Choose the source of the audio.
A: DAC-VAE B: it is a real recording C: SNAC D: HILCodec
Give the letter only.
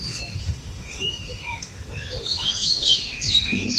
A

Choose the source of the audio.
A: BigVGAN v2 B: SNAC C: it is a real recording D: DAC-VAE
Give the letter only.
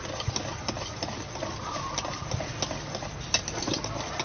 C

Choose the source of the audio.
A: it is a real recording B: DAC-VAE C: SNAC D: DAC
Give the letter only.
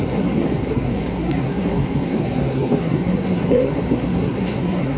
C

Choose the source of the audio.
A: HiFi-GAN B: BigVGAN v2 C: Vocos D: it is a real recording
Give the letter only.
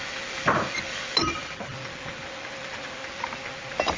D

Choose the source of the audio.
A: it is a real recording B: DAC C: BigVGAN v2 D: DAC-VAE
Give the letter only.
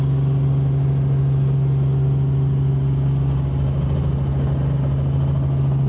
A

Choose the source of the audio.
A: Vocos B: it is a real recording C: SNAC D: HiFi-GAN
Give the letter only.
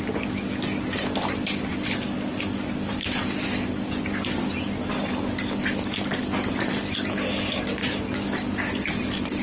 B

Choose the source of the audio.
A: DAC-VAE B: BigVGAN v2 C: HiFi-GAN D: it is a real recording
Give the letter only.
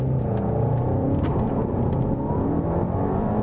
B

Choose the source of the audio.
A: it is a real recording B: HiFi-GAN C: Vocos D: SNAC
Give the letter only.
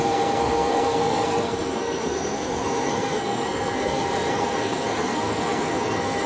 D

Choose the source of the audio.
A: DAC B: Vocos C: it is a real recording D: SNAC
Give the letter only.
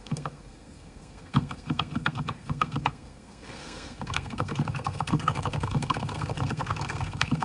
D